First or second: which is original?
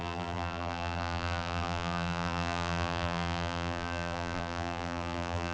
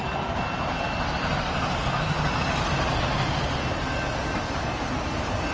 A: second